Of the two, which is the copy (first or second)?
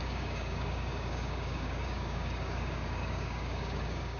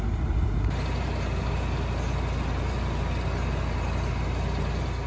first